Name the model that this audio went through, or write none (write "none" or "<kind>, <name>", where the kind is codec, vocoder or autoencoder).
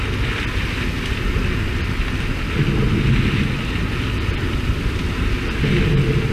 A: none